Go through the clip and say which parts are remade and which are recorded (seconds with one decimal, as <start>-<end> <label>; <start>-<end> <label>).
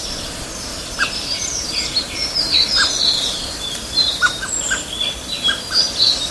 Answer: 0.0-0.7 recorded; 0.7-4.5 remade; 4.5-6.3 recorded